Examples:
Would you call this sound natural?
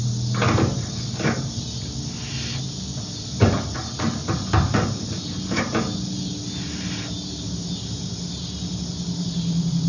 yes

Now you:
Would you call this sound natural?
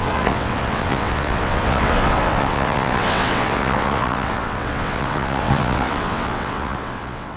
no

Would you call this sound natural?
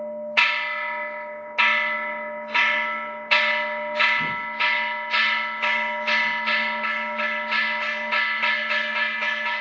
yes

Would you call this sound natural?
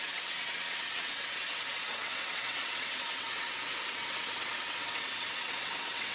no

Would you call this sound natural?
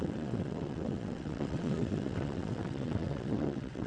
no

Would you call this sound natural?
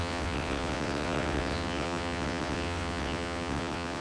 no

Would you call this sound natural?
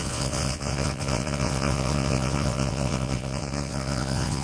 no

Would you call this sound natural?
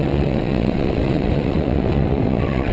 no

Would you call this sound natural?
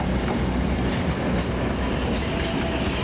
yes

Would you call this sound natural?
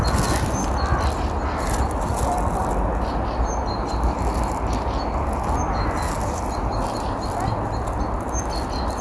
yes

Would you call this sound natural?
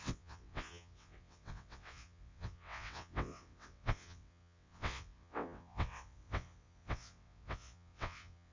no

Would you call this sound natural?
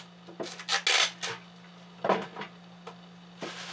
yes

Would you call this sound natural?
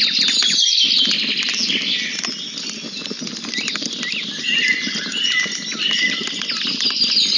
yes